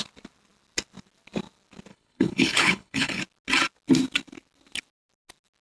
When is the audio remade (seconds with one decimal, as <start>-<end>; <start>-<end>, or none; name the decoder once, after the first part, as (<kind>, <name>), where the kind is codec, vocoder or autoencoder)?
1.9-3.2 (codec, HILCodec)